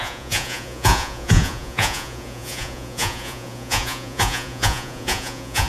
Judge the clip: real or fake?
fake